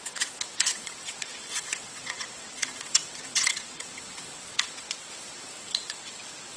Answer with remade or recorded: remade